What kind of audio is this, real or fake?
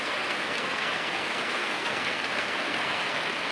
fake